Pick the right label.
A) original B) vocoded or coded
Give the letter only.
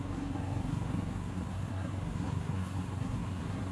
B